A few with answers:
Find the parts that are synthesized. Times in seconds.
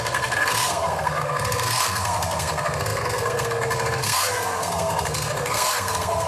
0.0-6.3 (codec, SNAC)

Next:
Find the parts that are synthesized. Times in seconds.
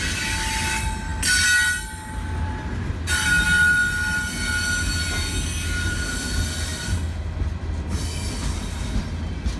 none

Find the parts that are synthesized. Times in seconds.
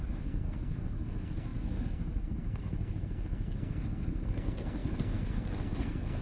0.0-6.2 (codec, SNAC)